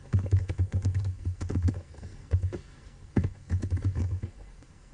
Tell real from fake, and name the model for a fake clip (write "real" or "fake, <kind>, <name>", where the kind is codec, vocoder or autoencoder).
fake, codec, SNAC